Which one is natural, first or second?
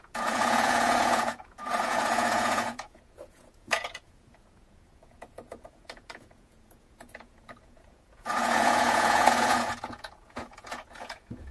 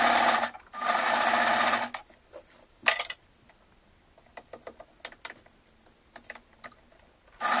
second